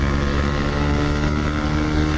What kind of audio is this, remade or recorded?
remade